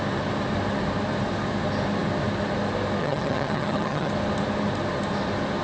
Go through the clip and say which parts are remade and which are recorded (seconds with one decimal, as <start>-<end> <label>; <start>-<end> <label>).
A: 0.0-3.0 recorded; 3.0-4.1 remade; 4.1-5.6 recorded